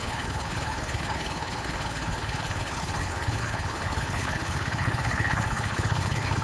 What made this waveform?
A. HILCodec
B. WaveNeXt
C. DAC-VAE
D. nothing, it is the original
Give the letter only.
A